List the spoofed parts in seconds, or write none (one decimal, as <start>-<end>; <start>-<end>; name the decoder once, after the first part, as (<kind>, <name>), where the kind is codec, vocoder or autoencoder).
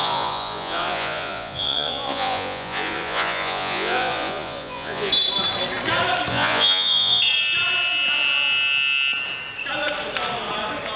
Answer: 0.0-5.1 (vocoder, Vocos); 6.3-7.2